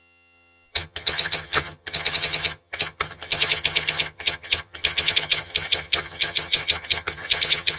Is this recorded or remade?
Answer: remade